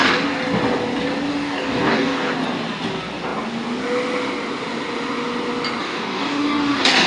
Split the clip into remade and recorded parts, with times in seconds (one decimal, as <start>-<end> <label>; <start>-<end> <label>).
0.0-1.3 recorded; 1.3-2.3 remade; 2.3-5.8 recorded; 5.8-7.1 remade